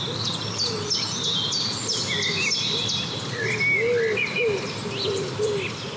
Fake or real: real